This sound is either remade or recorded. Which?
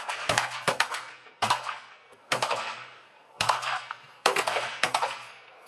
remade